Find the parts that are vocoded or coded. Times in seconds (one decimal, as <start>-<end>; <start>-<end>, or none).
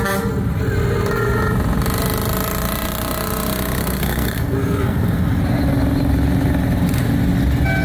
3.8-5.4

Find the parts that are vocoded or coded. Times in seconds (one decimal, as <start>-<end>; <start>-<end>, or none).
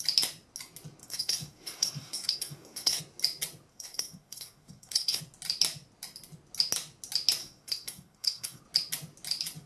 1.0-3.0; 3.7-5.2; 7.4-8.6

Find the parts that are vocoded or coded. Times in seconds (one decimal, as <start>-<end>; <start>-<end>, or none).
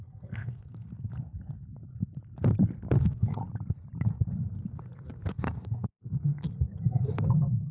0.0-0.9; 3.0-3.4; 5.3-7.7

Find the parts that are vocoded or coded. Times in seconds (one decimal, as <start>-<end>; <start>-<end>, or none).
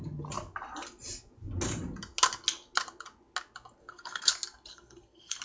3.8-4.3; 4.7-5.4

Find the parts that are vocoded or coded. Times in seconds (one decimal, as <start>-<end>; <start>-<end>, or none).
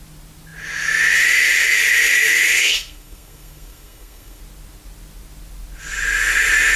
2.5-4.4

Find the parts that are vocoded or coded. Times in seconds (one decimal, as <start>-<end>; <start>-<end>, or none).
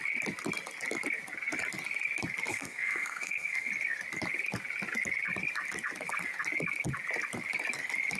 2.5-3.7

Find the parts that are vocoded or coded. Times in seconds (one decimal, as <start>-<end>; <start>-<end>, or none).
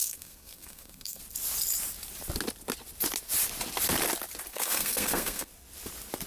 0.0-1.2; 4.5-5.5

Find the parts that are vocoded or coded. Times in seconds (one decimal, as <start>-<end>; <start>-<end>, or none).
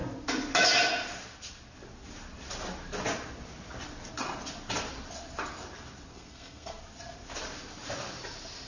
6.1-6.8